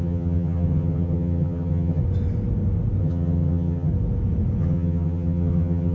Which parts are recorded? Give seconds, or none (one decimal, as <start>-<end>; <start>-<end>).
2.0-3.0; 3.9-4.6